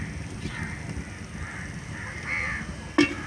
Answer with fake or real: real